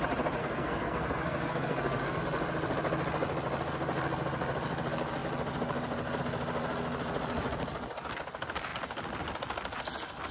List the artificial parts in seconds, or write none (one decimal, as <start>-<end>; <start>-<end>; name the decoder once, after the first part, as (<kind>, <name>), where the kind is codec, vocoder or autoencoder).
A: 0.4-2.2 (codec, SNAC)